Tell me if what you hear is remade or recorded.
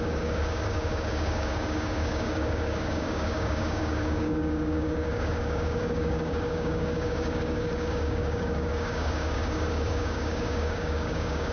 remade